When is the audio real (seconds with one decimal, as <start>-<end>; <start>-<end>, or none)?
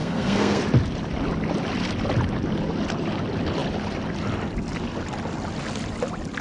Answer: 0.6-6.4